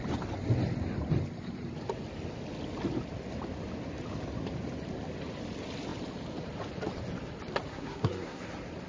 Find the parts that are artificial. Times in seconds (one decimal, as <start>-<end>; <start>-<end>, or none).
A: 7.7-8.4